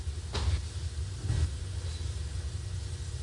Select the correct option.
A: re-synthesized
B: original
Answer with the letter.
B